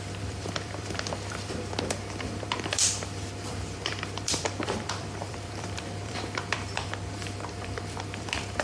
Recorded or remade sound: remade